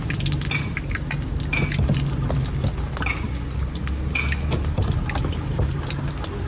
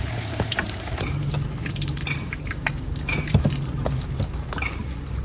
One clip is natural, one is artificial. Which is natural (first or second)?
first